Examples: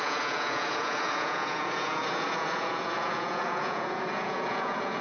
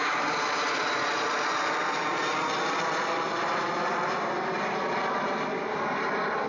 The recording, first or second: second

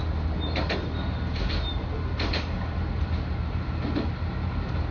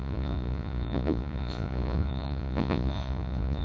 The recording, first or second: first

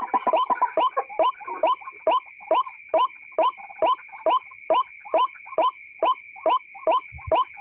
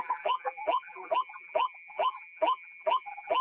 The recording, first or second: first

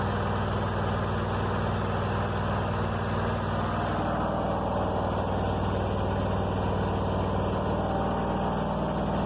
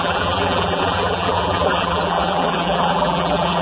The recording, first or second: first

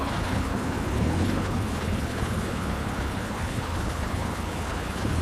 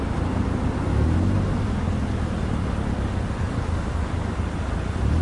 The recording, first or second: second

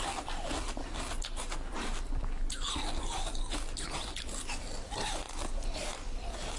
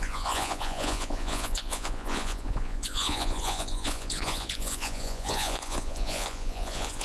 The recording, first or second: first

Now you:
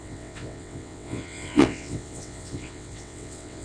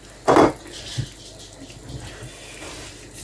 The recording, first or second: second